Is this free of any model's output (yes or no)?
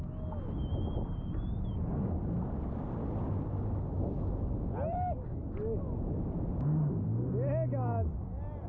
yes